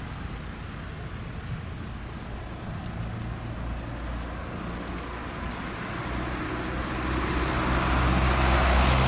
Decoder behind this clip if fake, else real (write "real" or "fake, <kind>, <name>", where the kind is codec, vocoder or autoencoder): real